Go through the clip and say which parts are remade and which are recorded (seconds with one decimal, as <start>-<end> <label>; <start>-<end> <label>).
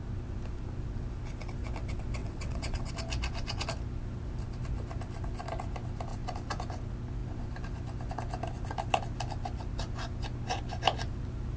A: 0.0-2.2 recorded; 2.2-2.9 remade; 2.9-11.6 recorded